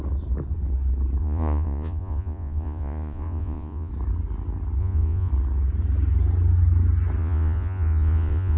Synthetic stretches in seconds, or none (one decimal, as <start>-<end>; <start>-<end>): 1.2-3.9; 4.8-5.3; 7.2-8.6